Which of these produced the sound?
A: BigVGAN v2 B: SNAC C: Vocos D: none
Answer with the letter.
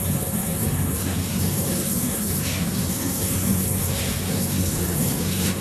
B